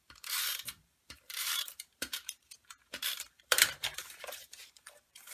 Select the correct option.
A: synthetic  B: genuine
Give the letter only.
A